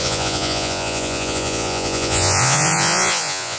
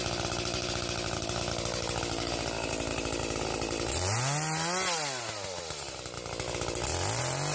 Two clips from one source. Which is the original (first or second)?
second